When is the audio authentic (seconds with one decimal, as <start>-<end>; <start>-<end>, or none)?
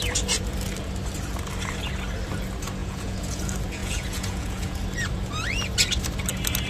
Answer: 0.0-2.8; 3.4-3.8; 4.8-6.7